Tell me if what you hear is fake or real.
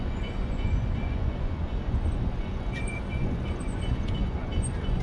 fake